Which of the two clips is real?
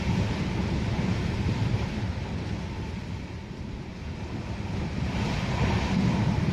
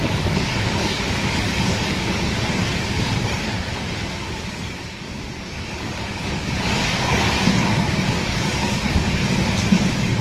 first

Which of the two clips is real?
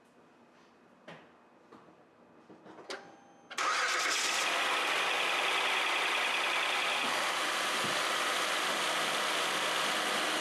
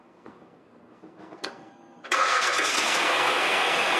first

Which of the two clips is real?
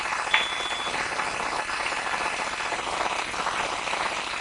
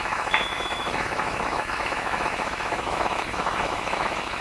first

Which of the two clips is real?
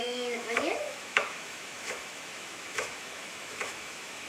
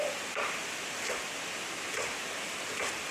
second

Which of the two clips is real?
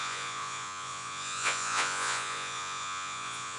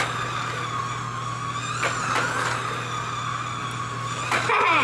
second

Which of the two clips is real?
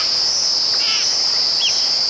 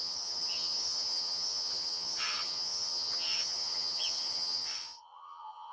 first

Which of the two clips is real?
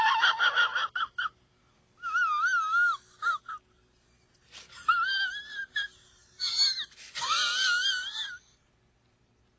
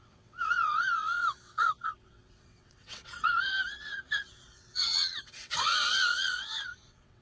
first